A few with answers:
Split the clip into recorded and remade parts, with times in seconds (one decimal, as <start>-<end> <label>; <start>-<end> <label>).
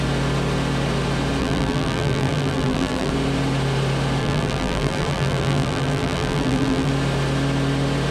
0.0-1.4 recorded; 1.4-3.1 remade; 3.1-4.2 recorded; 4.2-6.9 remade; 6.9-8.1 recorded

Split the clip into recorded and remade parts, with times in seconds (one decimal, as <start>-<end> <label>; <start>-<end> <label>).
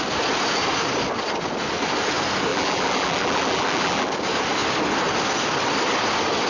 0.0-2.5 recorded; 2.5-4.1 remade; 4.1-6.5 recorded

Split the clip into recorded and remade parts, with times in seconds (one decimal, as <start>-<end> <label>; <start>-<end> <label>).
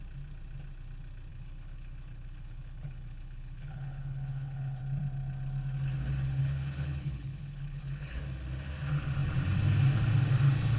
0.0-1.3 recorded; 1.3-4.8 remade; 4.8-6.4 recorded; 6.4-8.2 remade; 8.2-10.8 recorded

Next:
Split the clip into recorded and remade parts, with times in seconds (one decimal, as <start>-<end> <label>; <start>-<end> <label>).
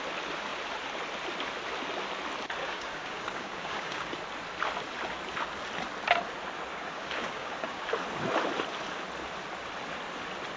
0.0-2.6 recorded; 2.6-4.1 remade; 4.1-6.7 recorded; 6.7-7.9 remade; 7.9-10.6 recorded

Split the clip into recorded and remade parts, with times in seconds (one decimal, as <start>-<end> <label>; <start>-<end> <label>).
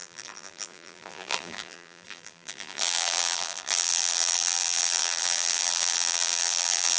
0.0-7.0 remade